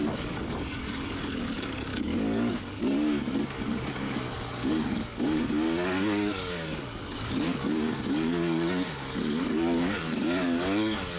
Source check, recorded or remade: remade